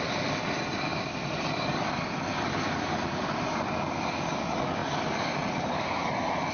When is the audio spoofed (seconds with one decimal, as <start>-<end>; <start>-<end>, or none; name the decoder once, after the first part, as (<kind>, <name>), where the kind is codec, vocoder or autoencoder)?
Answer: 0.9-3.7 (vocoder, BigVGAN v2); 4.8-6.5

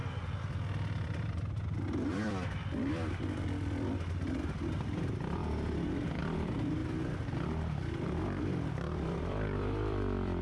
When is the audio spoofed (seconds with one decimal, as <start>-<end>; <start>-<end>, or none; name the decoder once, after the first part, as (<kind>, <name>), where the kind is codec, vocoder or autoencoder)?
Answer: 1.8-5.4 (vocoder, BigVGAN v2); 6.2-10.4

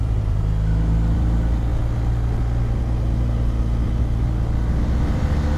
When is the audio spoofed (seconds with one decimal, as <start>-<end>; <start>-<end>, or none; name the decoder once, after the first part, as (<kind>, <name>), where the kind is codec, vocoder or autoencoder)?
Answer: 0.0-1.7 (vocoder, BigVGAN v2); 5.1-5.6

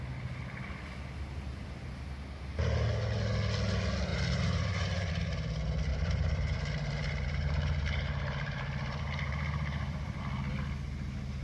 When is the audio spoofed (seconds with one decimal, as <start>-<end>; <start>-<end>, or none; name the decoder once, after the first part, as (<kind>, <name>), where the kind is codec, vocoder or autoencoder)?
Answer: 4.1-5.1 (vocoder, BigVGAN v2); 5.9-10.2

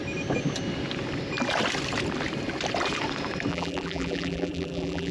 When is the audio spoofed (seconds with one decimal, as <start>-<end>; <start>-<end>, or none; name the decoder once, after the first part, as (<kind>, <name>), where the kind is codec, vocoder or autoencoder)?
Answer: 3.5-5.1 (vocoder, BigVGAN v2)

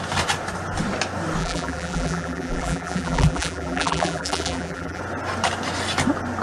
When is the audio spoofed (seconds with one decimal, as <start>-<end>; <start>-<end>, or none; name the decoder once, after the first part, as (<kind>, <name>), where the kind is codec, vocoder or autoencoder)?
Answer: 1.4-5.0 (vocoder, BigVGAN v2)

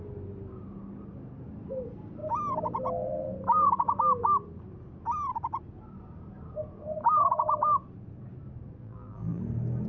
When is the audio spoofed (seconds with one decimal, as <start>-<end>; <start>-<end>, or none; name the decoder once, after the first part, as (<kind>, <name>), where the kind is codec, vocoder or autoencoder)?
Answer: 8.8-9.4 (vocoder, BigVGAN v2)

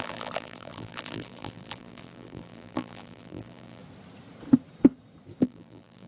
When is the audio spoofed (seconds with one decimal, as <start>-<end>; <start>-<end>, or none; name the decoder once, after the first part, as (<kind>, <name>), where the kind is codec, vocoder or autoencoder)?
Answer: 0.0-3.8 (vocoder, BigVGAN v2); 5.4-6.1